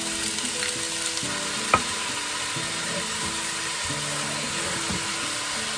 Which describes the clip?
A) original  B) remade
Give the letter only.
A